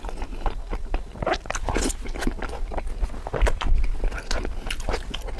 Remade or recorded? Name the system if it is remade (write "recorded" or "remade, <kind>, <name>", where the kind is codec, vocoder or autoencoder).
recorded